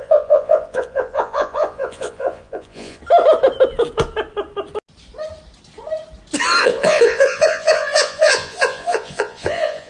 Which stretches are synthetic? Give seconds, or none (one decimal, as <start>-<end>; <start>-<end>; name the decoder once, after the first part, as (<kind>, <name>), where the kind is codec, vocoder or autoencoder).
0.0-3.0 (vocoder, Vocos); 6.6-9.9